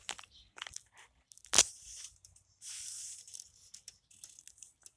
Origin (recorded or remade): recorded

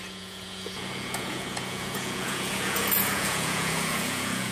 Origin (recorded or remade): remade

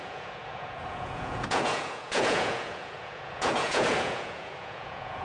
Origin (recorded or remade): remade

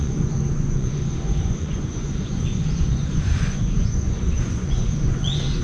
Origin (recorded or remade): remade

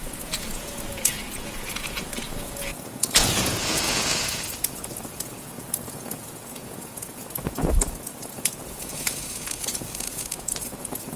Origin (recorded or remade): remade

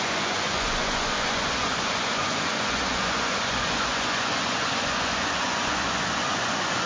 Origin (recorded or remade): remade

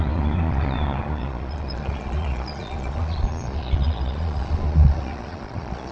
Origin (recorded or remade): remade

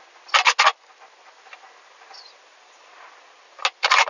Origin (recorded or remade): recorded